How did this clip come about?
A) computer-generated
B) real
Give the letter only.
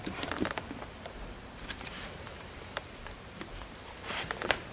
A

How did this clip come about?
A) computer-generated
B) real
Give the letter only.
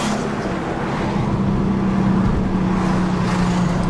B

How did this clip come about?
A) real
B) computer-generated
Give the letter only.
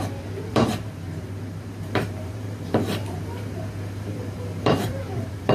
B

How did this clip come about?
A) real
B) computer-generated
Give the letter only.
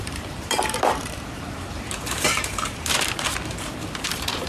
B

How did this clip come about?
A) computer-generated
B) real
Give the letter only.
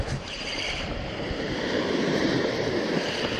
A